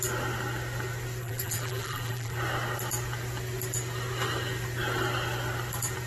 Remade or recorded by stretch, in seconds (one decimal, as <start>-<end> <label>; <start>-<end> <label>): 0.0-1.2 recorded; 1.2-2.4 remade; 2.4-6.1 recorded

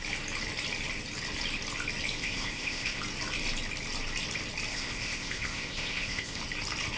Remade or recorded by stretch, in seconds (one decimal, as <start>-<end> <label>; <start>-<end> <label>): 0.0-2.2 recorded; 2.2-3.0 remade; 3.0-4.7 recorded; 4.7-6.4 remade; 6.4-7.0 recorded

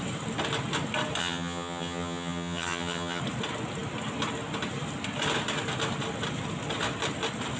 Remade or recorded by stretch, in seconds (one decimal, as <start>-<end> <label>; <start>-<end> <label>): 0.0-1.2 recorded; 1.2-3.2 remade; 3.2-7.6 recorded

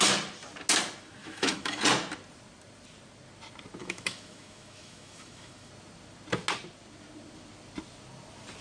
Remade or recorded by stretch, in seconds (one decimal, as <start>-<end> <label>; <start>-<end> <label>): 0.0-1.2 recorded; 1.2-1.8 remade; 1.8-3.8 recorded; 3.8-5.7 remade; 5.7-8.6 recorded

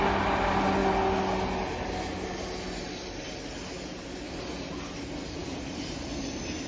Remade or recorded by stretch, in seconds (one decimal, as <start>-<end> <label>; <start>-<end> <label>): 0.0-6.7 recorded

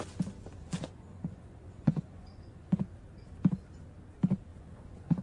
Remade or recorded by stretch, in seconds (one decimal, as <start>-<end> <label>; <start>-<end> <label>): 0.0-0.6 recorded; 0.6-2.8 remade; 2.8-4.5 recorded; 4.5-5.2 remade